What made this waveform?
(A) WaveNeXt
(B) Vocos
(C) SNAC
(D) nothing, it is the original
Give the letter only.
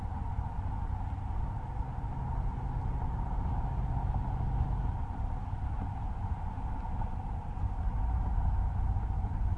D